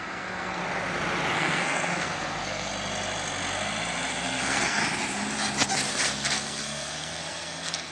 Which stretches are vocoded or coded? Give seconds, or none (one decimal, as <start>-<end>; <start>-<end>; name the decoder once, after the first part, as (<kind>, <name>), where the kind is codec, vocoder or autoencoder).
0.0-0.6 (codec, SNAC); 1.3-2.7; 4.1-4.8; 5.9-7.9

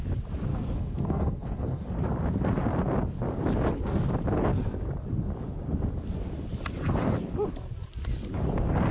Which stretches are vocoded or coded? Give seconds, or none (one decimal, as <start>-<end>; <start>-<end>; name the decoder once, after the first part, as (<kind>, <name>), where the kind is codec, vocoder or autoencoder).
0.5-1.8 (codec, SNAC)

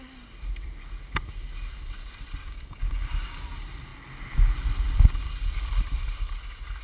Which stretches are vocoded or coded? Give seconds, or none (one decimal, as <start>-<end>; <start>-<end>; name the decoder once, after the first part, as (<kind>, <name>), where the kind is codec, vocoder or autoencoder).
2.4-3.4 (codec, DAC)

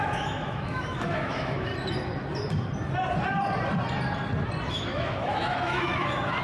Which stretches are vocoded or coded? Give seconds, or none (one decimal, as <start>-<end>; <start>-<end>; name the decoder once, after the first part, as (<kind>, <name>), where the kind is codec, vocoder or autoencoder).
0.0-1.7 (autoencoder, DAC-VAE); 4.7-6.4

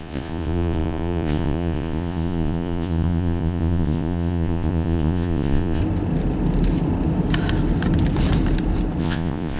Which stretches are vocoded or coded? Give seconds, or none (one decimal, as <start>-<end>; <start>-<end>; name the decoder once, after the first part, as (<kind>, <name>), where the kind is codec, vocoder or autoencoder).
0.0-5.8 (vocoder, Vocos); 9.0-9.6

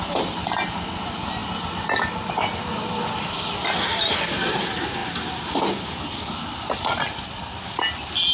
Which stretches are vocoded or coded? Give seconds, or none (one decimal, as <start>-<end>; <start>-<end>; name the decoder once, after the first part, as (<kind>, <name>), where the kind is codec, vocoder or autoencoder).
none